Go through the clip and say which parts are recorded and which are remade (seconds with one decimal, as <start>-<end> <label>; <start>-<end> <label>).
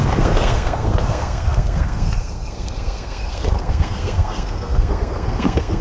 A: 0.0-5.8 remade